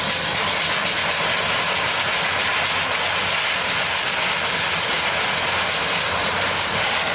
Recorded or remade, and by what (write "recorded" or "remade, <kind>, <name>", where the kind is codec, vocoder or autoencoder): recorded